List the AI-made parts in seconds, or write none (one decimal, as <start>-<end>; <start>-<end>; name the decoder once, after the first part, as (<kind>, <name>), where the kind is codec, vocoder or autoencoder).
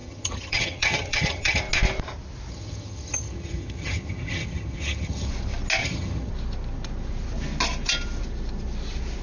0.0-1.6 (vocoder, HiFi-GAN); 2.5-5.3; 5.8-6.3